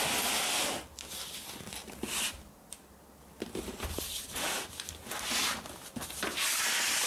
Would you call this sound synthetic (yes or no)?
no